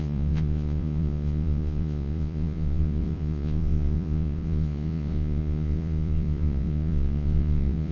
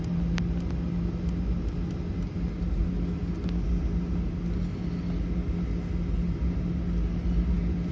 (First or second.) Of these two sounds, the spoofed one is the first